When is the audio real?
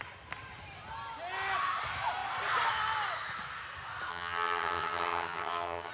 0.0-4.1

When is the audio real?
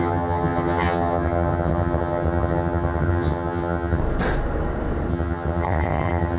4.0-5.1